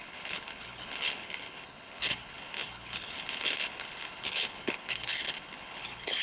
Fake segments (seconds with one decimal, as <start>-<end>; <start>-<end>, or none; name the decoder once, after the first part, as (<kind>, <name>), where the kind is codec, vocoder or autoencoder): 0.0-6.2 (codec, HILCodec)